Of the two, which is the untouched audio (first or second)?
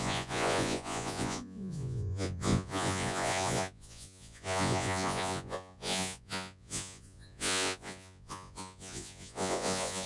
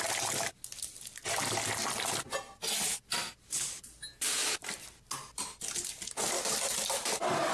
second